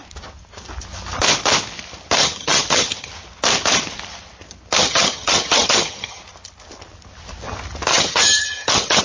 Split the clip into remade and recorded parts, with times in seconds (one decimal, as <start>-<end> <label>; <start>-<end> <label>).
0.0-2.2 recorded; 2.2-3.1 remade; 3.1-4.8 recorded; 4.8-6.2 remade; 6.2-7.9 recorded; 7.9-9.0 remade